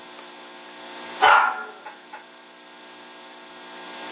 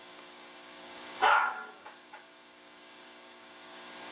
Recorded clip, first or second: first